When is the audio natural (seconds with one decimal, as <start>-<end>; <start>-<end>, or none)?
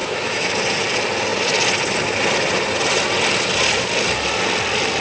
0.5-5.0